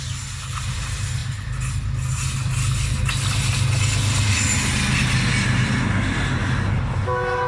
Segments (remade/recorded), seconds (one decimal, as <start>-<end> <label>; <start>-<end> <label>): 0.0-7.5 recorded